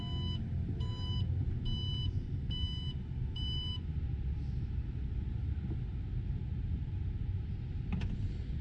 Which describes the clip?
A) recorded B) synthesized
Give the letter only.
A